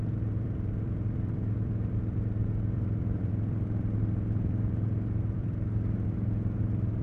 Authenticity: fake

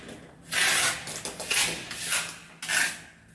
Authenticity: real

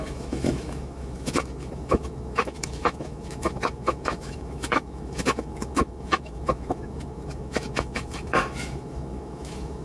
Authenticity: fake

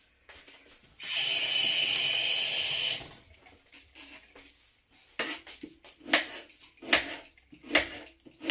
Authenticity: real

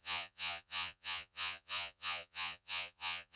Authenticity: fake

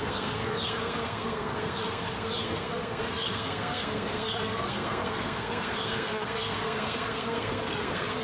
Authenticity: fake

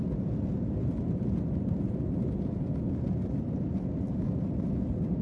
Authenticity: real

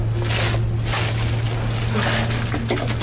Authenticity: real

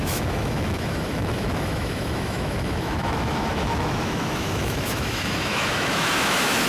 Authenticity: fake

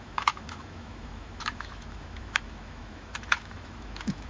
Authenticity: fake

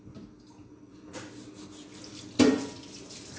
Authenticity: real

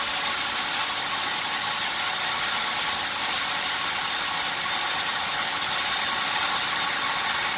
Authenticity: real